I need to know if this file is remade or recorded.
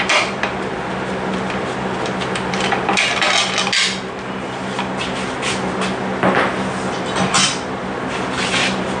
recorded